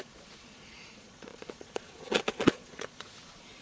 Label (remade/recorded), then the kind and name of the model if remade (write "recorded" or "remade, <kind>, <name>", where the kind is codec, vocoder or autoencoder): remade, vocoder, Vocos